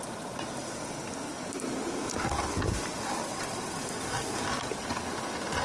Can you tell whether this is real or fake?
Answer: real